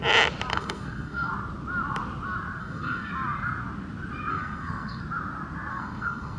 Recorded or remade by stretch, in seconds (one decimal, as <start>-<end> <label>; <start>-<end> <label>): 0.0-0.5 recorded; 0.5-1.3 remade; 1.3-2.6 recorded; 2.6-3.1 remade; 3.1-4.3 recorded; 4.3-5.0 remade; 5.0-5.7 recorded; 5.7-6.4 remade